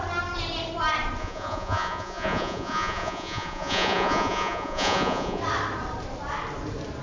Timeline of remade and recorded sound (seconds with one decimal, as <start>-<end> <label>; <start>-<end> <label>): 0.0-1.2 recorded; 1.2-5.4 remade; 5.4-7.0 recorded